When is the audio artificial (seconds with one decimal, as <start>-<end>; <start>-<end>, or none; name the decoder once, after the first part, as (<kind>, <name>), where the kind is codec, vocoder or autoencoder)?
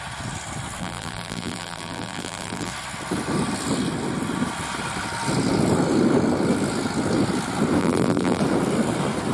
0.8-2.7 (vocoder, BigVGAN v2); 7.8-8.4